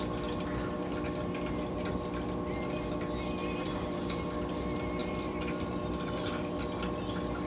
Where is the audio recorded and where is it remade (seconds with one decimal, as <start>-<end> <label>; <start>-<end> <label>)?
0.0-3.4 recorded; 3.4-4.2 remade; 4.2-5.0 recorded; 5.0-5.8 remade; 5.8-7.5 recorded